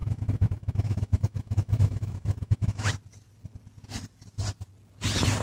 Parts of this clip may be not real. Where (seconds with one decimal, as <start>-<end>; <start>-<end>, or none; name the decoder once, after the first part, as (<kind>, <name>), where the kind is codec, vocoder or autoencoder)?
0.0-2.9 (autoencoder, DAC-VAE)